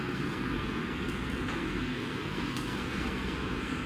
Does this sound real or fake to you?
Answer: fake